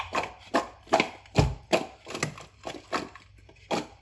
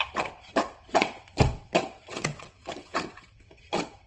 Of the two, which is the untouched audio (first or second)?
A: first